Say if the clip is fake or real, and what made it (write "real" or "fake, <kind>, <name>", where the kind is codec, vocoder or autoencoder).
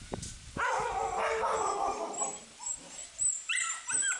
real